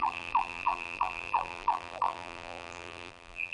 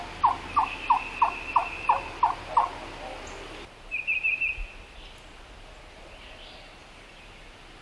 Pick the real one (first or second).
second